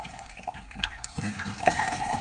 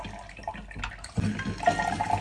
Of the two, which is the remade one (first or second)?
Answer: first